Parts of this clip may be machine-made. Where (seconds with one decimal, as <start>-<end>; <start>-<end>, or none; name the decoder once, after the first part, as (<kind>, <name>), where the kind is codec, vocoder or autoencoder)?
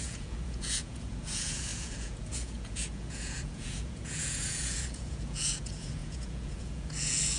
0.0-7.4 (vocoder, Vocos)